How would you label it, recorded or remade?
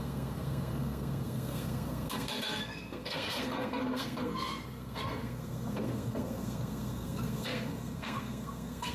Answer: remade